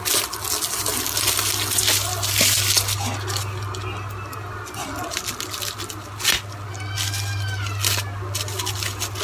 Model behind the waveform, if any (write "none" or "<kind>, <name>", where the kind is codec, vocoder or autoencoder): none